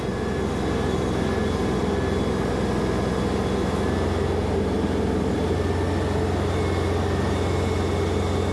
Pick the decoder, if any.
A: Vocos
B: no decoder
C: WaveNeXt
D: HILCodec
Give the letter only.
B